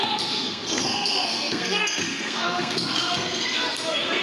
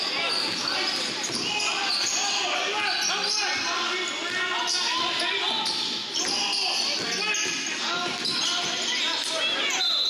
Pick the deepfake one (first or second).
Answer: first